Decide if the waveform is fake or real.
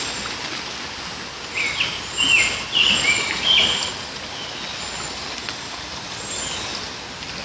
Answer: real